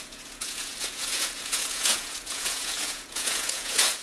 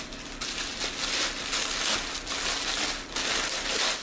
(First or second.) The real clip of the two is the second